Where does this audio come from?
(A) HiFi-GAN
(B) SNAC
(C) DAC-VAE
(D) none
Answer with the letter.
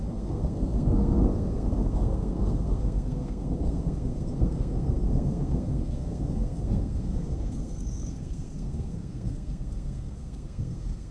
B